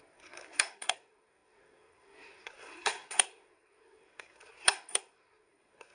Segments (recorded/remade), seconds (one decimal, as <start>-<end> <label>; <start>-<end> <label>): 0.0-5.9 remade